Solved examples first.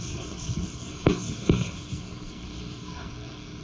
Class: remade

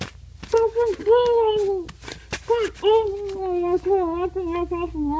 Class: recorded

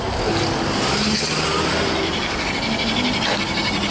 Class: recorded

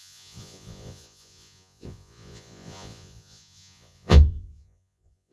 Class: remade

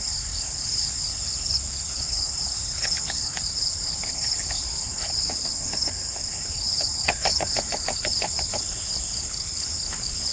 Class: remade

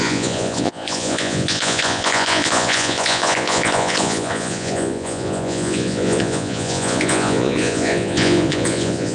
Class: remade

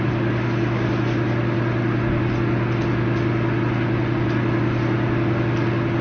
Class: recorded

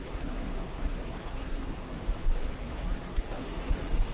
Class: remade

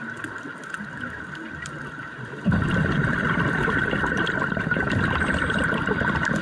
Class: remade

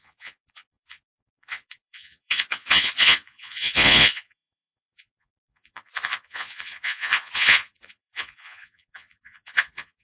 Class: remade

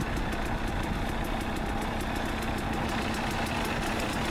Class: recorded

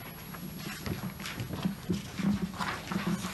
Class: recorded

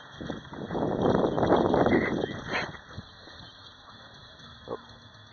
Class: recorded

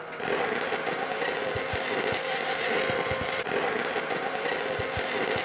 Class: recorded